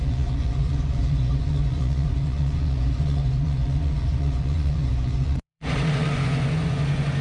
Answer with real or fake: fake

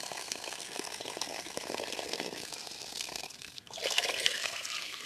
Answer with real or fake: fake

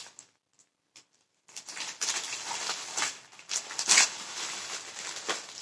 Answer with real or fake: real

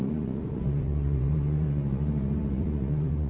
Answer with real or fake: fake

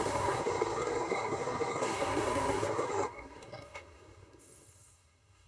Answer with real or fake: fake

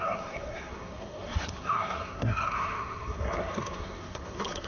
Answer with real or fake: fake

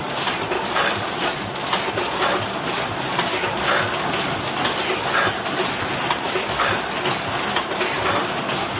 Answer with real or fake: real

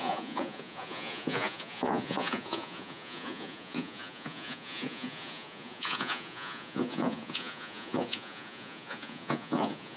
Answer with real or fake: fake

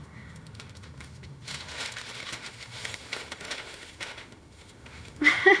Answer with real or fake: fake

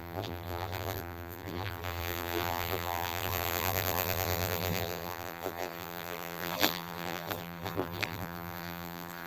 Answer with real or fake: fake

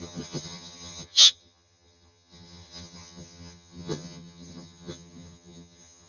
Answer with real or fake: fake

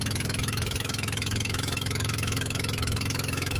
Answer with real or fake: fake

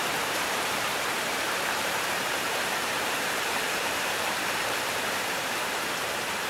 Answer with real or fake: fake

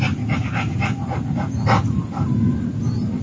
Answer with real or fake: real